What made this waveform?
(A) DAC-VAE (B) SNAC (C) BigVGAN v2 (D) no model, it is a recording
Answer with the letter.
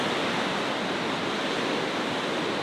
D